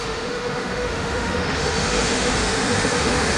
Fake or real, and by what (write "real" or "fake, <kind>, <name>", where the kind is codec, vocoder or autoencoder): fake, autoencoder, DAC-VAE